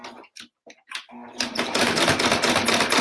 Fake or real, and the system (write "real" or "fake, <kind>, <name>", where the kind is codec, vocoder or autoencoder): real